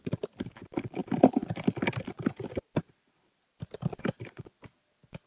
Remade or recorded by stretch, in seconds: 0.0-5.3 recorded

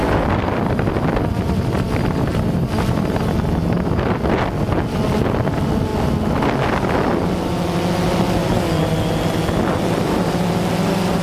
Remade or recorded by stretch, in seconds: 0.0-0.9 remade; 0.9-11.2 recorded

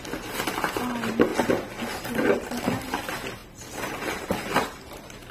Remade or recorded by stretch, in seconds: 0.0-5.3 recorded